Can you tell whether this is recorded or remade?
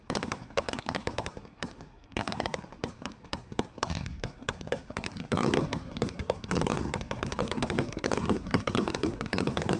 remade